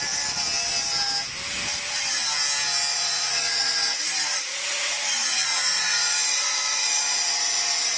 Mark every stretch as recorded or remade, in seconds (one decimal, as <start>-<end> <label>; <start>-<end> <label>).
0.0-2.9 recorded; 2.9-8.0 remade